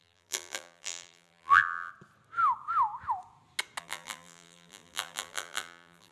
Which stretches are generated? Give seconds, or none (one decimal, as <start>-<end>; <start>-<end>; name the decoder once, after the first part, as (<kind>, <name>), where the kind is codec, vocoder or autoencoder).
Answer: 0.0-1.9 (vocoder, BigVGAN v2); 3.8-6.1